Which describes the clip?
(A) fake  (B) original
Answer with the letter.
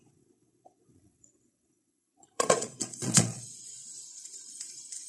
A